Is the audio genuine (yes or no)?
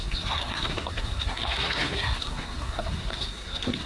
no